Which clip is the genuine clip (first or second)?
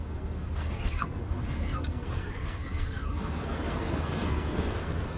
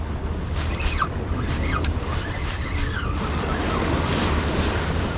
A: second